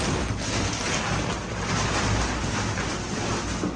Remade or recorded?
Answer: recorded